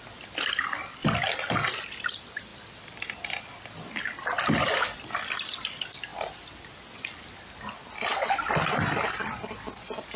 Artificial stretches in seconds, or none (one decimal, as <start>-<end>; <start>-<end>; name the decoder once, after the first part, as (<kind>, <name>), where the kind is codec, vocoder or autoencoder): none

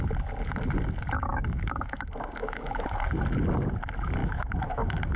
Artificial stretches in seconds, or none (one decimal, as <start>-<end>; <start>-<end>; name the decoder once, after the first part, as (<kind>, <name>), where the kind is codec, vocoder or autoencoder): 1.3-2.0 (autoencoder, DAC-VAE); 2.4-3.0; 4.2-5.2

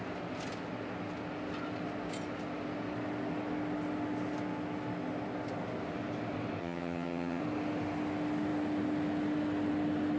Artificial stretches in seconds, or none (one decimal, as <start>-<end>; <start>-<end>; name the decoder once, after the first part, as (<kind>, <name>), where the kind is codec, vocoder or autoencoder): 6.6-7.4 (vocoder, HiFi-GAN)

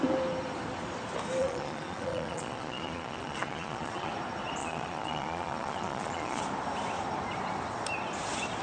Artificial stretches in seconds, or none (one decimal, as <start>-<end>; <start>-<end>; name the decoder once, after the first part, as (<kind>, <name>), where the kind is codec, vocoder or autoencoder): 1.4-4.1 (vocoder, Vocos); 4.6-6.4

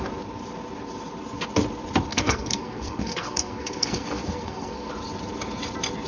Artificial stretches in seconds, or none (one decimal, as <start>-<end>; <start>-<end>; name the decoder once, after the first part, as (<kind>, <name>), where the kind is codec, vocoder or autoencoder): 2.1-4.9 (codec, SNAC)

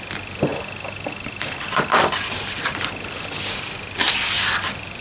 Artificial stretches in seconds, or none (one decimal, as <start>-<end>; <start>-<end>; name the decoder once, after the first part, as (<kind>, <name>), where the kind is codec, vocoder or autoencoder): none

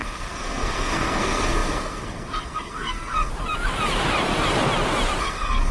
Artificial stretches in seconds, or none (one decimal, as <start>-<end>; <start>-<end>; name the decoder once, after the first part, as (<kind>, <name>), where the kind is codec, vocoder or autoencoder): 0.0-3.3 (codec, SNAC); 5.2-5.7

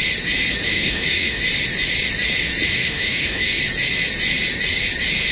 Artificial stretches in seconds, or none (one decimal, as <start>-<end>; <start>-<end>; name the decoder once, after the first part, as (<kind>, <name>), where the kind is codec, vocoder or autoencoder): 0.7-1.4 (autoencoder, DAC-VAE); 2.7-3.6